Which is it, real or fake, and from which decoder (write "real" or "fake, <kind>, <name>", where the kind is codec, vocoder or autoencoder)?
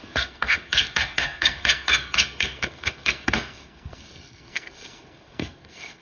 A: fake, codec, SNAC